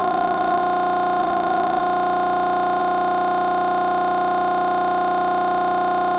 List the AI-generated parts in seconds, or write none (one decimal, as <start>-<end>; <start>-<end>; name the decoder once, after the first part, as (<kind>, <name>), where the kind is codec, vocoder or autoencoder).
0.0-0.6 (vocoder, Vocos); 1.2-1.8